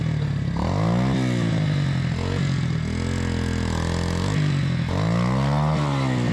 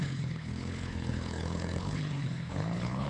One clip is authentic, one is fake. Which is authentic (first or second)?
first